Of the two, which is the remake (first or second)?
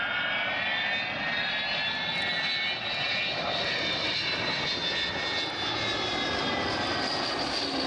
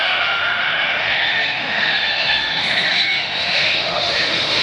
second